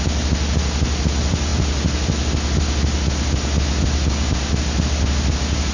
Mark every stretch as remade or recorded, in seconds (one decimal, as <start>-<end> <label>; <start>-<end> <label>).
0.0-5.7 recorded